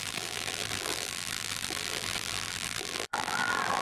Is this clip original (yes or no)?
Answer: no